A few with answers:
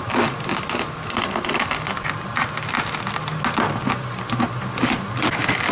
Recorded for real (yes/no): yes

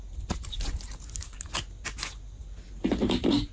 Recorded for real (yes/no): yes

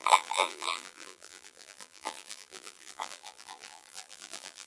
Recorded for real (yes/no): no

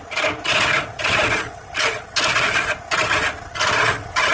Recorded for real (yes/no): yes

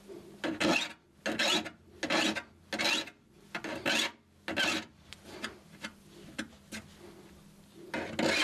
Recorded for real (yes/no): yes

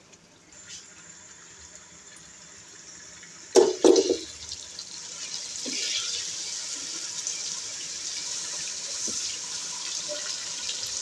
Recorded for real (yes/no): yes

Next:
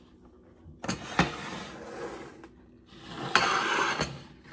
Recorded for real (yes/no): yes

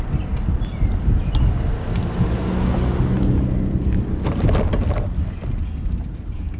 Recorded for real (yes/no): yes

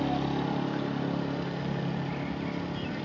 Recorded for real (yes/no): yes